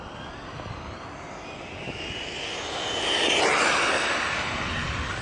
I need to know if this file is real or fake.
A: fake